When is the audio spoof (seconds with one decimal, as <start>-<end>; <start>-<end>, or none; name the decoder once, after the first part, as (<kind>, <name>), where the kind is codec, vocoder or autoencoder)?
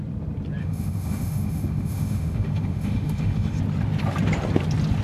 0.6-3.6 (autoencoder, DAC-VAE)